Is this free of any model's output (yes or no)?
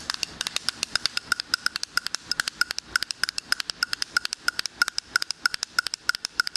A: no